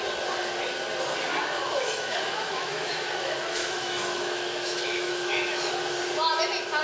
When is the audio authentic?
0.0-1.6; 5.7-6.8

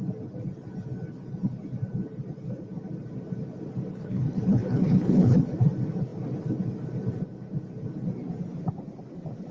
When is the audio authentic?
0.0-3.9; 5.4-9.5

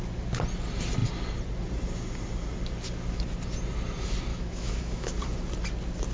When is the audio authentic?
0.0-4.3; 5.1-6.1

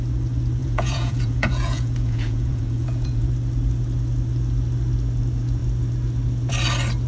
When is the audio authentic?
0.0-0.6; 3.3-7.1

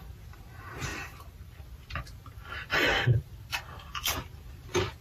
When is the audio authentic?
0.0-0.9; 1.6-2.7; 3.3-5.0